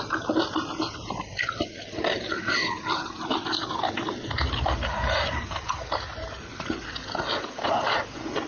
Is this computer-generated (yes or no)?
no